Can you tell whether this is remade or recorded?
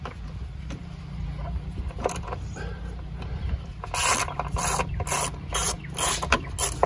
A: recorded